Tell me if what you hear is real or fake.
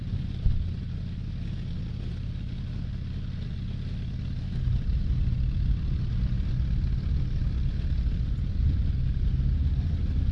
real